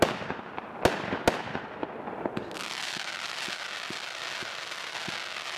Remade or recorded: recorded